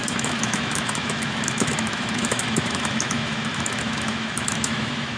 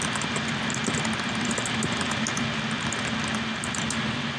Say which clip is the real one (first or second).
second